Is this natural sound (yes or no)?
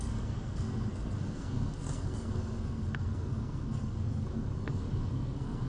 no